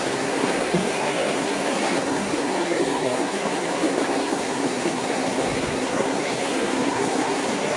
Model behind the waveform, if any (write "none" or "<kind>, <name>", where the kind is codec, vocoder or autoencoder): codec, SNAC